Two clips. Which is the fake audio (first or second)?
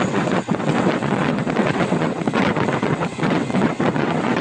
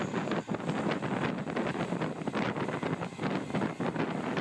first